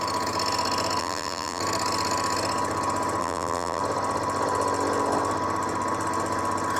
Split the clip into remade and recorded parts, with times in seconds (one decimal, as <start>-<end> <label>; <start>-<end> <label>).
0.0-1.0 recorded; 1.0-1.6 remade; 1.6-3.2 recorded; 3.2-3.8 remade; 3.8-6.8 recorded

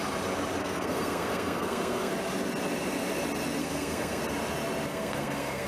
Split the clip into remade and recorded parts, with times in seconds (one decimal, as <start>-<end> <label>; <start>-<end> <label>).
0.0-0.6 recorded; 0.6-2.1 remade; 2.1-3.6 recorded; 3.6-4.2 remade; 4.2-4.9 recorded; 4.9-5.7 remade

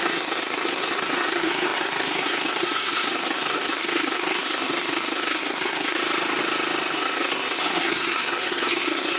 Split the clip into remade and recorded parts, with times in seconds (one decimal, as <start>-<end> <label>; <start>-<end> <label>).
0.0-6.0 remade; 6.0-6.9 recorded; 6.9-9.2 remade

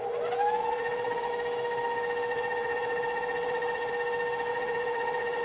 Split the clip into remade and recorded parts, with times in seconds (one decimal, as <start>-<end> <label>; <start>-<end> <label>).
0.0-0.6 recorded; 0.6-1.3 remade; 1.3-2.3 recorded; 2.3-3.9 remade; 3.9-4.5 recorded; 4.5-5.4 remade

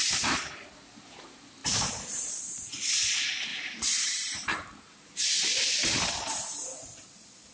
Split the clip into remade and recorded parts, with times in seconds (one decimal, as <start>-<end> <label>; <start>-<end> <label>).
0.0-0.5 remade; 0.5-1.6 recorded; 1.6-2.3 remade; 2.3-3.5 recorded; 3.5-5.1 remade; 5.1-7.5 recorded

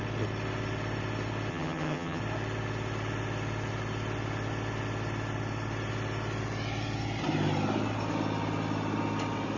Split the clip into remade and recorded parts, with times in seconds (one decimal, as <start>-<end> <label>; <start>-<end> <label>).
0.0-1.5 recorded; 1.5-2.2 remade; 2.2-9.6 recorded